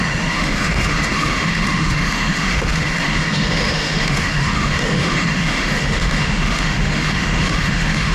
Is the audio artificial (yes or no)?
yes